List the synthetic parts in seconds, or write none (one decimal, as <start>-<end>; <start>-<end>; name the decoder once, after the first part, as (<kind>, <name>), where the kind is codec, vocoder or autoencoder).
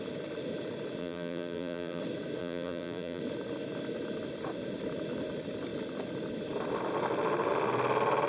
1.0-2.0 (vocoder, BigVGAN v2); 2.4-3.2